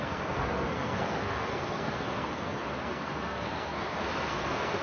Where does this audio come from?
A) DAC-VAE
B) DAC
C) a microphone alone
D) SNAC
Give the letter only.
D